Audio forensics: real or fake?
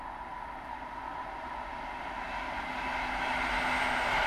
real